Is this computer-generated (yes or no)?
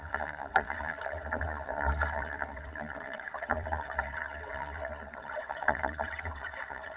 yes